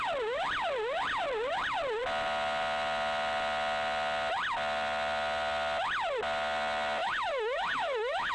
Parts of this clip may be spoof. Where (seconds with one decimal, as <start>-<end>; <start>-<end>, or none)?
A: 7.0-8.3